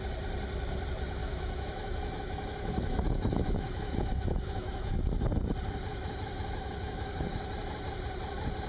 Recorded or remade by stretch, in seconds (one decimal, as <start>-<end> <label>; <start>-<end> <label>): 0.0-1.2 recorded; 1.2-5.2 remade; 5.2-5.9 recorded; 5.9-7.3 remade; 7.3-8.7 recorded